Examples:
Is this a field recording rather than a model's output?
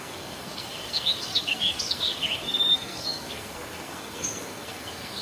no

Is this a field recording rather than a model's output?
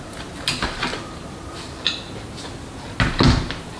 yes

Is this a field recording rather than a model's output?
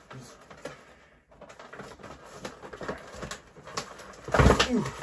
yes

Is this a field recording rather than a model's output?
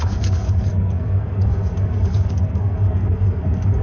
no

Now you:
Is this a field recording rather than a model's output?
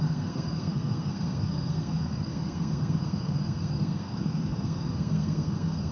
no